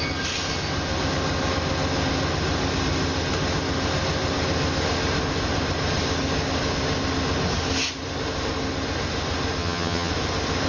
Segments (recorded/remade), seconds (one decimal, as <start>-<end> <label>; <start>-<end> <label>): 0.0-9.6 recorded; 9.6-10.1 remade; 10.1-10.7 recorded